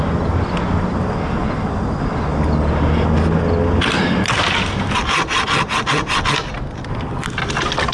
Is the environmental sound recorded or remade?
recorded